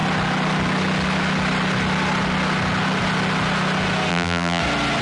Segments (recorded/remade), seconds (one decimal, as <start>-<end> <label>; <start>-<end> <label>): 0.0-4.1 recorded; 4.1-4.6 remade; 4.6-5.0 recorded